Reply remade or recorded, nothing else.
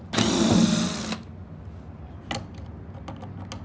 recorded